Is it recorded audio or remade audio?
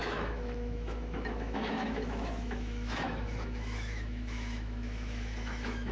remade